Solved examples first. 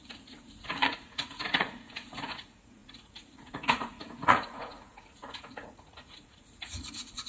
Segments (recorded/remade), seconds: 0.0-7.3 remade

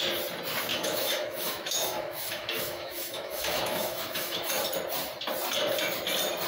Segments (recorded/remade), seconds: 0.0-0.7 recorded; 0.7-4.5 remade; 4.5-6.5 recorded

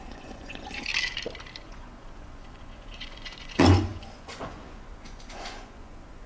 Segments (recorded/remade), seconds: 0.0-0.9 remade; 0.9-1.6 recorded; 1.6-6.3 remade

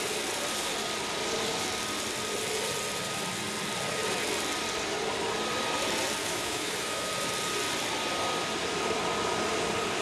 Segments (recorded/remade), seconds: 0.0-6.2 recorded; 6.2-7.1 remade; 7.1-10.0 recorded

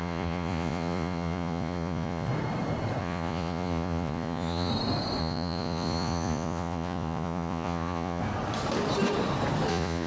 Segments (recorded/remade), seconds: 0.0-2.3 remade; 2.3-3.0 recorded; 3.0-4.7 remade; 4.7-5.2 recorded; 5.2-8.2 remade; 8.2-9.7 recorded; 9.7-10.1 remade

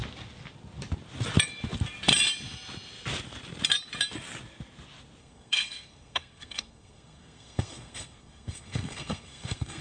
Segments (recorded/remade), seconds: 0.0-5.2 recorded; 5.2-9.8 remade